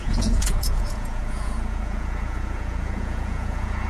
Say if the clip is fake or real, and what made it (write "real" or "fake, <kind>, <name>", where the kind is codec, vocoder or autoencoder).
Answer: fake, vocoder, Vocos